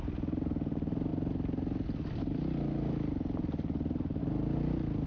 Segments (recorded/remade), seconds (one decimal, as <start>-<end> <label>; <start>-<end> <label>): 0.0-5.1 recorded